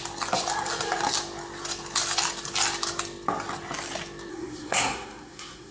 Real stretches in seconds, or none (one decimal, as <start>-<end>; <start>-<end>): 0.0-4.3